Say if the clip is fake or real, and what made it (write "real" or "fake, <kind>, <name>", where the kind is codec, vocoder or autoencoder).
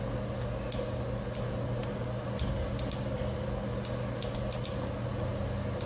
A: real